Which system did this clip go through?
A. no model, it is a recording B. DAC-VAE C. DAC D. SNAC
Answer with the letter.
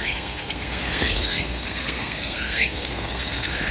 D